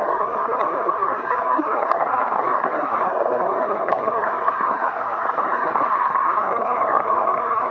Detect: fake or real fake